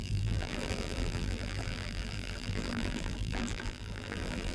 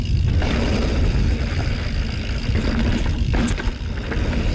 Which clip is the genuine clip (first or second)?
second